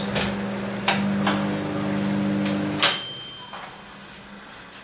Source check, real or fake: real